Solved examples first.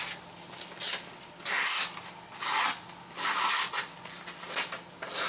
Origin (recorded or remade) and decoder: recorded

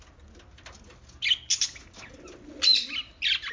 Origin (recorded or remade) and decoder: recorded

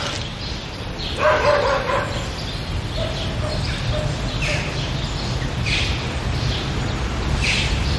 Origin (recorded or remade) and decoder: recorded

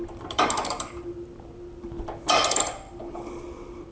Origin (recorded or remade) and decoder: recorded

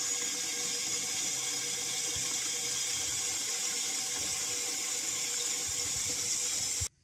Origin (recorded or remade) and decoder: recorded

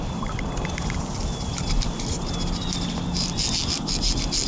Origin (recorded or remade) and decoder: recorded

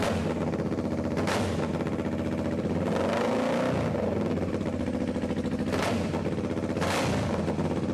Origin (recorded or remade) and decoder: recorded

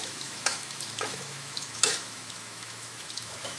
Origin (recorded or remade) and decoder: remade, autoencoder, DAC-VAE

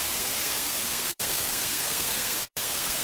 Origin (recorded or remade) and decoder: remade, codec, SNAC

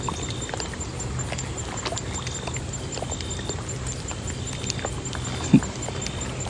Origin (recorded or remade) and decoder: recorded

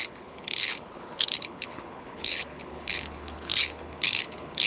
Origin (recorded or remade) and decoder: remade, codec, HILCodec